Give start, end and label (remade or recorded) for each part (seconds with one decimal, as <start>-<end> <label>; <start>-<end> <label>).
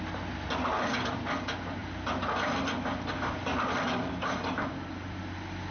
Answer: 0.0-5.7 recorded